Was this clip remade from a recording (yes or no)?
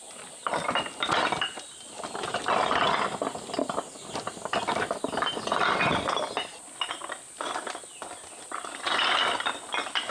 no